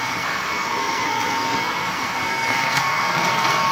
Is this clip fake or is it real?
fake